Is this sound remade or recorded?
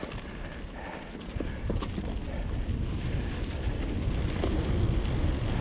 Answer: recorded